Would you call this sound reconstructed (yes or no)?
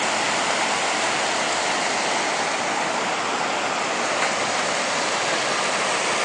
no